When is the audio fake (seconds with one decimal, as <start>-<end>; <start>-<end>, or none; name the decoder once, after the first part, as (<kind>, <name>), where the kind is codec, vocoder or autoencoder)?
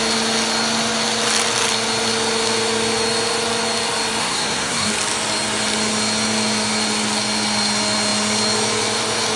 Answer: 4.2-4.9 (codec, SNAC)